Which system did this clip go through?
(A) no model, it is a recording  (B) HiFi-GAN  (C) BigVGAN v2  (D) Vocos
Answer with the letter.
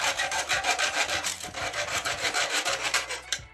C